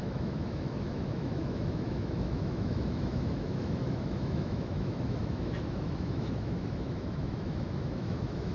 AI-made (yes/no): yes